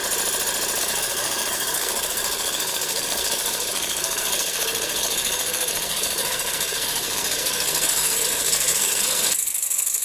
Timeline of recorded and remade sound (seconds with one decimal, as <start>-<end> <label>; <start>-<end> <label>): 0.0-0.8 recorded; 0.8-10.0 remade